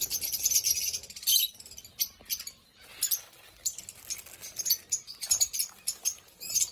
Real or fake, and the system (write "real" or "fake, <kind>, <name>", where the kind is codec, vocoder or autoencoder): real